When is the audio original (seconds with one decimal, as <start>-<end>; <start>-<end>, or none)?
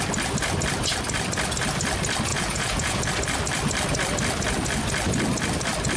0.0-2.3; 3.1-6.0